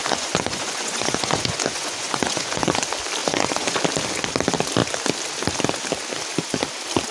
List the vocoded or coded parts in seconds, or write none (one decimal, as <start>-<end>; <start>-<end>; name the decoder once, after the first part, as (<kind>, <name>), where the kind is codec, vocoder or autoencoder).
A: 0.0-2.8 (vocoder, Vocos); 3.2-3.8

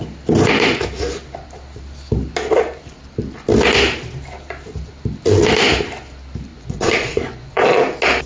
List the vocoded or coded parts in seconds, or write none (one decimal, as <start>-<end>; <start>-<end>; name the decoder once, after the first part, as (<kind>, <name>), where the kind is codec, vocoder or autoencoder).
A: 6.5-7.6 (vocoder, Vocos)

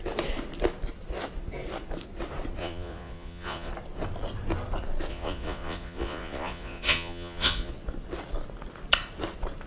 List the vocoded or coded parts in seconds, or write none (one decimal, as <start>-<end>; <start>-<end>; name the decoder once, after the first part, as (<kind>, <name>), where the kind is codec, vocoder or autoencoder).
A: 2.6-3.7 (vocoder, Vocos); 5.1-7.7

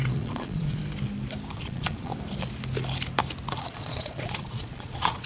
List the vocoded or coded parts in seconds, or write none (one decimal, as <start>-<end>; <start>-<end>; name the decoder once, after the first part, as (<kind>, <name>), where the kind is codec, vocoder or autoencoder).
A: 0.0-0.8 (vocoder, Vocos); 1.6-2.1; 3.5-5.3

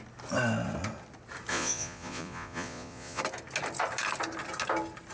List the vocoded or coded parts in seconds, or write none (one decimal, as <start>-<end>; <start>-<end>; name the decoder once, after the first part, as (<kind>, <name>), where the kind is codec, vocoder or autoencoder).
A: 1.5-3.2 (vocoder, Vocos)

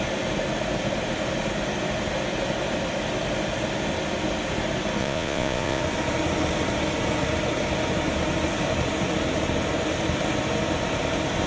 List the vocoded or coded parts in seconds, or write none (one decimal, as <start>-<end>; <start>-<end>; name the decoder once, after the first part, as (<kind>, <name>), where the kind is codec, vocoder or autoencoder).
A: 5.0-5.8 (vocoder, Vocos)

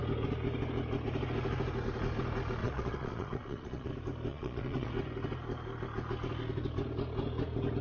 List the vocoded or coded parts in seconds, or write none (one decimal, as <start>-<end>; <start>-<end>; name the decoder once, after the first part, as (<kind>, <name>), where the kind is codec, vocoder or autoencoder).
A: 2.6-3.9 (vocoder, Vocos); 4.3-4.9